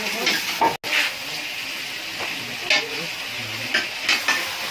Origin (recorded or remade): recorded